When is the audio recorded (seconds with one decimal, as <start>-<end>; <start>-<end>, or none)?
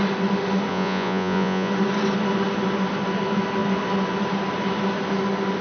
0.0-0.7; 1.7-5.6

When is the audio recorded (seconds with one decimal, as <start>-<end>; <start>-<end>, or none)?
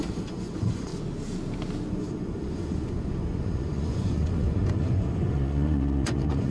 0.9-1.9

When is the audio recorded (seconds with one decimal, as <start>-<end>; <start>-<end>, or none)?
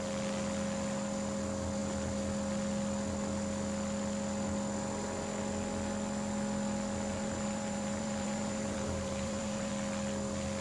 0.0-7.1; 9.7-10.6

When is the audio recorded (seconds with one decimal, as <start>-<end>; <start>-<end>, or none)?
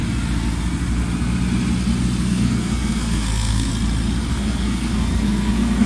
0.0-2.2; 3.7-4.3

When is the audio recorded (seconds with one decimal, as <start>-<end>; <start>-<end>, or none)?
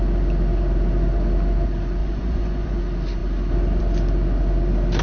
0.0-2.0; 2.8-5.0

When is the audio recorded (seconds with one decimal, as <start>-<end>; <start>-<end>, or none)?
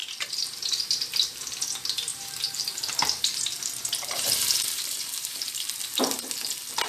0.8-2.1; 5.5-6.9